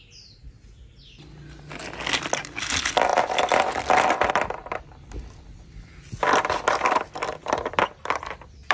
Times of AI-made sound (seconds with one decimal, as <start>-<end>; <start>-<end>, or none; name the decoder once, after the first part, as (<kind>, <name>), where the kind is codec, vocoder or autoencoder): 3.1-4.3 (vocoder, BigVGAN v2)